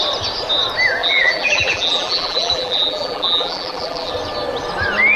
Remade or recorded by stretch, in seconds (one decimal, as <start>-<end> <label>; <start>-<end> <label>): 0.0-1.0 recorded; 1.0-4.1 remade; 4.1-5.2 recorded

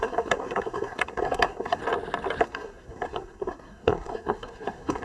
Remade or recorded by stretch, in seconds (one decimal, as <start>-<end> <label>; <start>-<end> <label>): 0.0-1.8 remade; 1.8-2.4 recorded; 2.4-5.0 remade